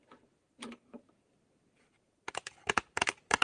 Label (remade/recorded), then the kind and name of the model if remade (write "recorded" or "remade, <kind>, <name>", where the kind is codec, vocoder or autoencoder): recorded